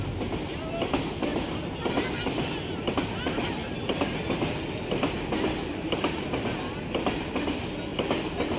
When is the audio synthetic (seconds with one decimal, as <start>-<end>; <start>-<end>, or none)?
none